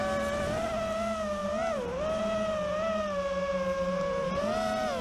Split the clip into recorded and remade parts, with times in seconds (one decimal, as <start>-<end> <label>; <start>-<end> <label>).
0.0-1.4 recorded; 1.4-4.4 remade; 4.4-5.0 recorded